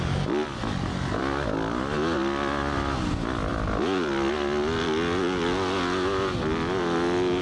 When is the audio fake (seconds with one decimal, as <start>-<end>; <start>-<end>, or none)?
none